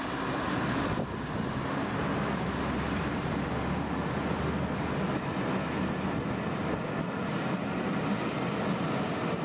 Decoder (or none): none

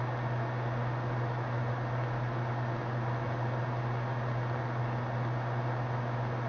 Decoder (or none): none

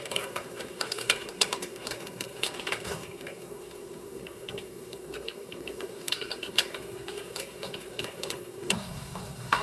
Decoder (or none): codec, SNAC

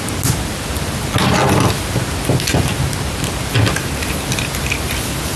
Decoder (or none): none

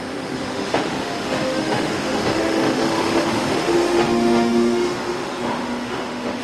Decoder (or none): autoencoder, DAC-VAE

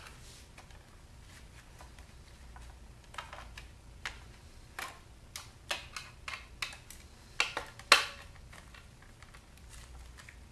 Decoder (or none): none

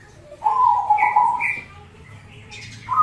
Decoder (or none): none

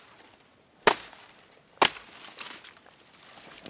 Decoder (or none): none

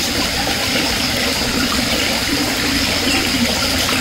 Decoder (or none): vocoder, BigVGAN v2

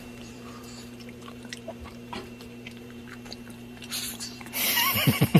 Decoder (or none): vocoder, BigVGAN v2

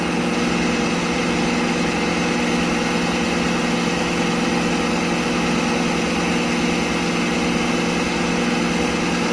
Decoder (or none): none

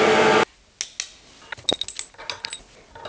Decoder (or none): none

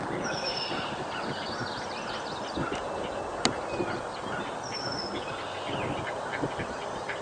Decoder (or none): none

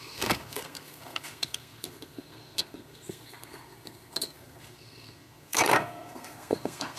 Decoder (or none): codec, SNAC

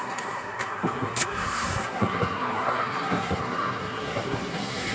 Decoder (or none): codec, SNAC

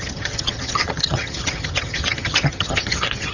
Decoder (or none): vocoder, HiFi-GAN